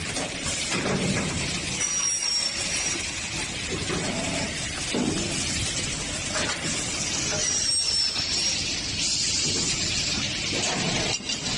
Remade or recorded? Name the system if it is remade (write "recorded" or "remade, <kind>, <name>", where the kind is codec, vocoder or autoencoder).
recorded